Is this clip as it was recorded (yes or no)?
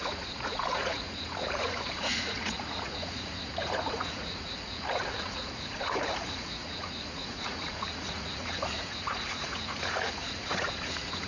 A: no